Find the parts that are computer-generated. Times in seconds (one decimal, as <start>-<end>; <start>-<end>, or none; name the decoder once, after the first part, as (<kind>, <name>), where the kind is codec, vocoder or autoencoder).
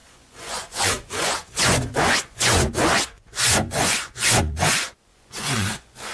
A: 0.0-6.1 (vocoder, Vocos)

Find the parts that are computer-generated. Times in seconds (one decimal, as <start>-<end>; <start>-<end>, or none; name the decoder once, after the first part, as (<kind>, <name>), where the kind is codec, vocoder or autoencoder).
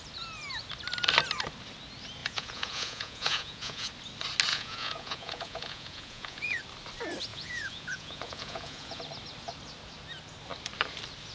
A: 2.2-3.9 (vocoder, Vocos); 4.5-6.6; 7.3-9.0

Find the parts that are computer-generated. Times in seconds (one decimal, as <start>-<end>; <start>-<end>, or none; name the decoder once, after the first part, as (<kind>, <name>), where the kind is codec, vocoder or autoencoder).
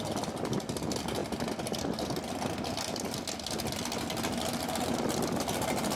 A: none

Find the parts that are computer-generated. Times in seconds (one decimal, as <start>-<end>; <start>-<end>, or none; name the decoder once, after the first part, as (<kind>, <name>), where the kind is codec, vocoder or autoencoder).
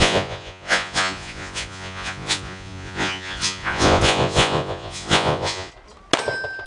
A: 0.0-5.7 (vocoder, Vocos)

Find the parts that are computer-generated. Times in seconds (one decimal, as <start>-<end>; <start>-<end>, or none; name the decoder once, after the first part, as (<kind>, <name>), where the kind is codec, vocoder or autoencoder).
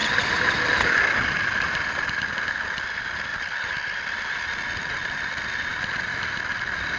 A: none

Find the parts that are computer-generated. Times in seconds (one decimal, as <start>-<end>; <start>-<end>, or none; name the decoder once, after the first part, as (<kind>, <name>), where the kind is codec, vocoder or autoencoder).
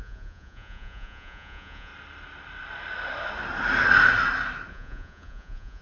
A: 0.0-1.9 (vocoder, Vocos); 4.7-5.8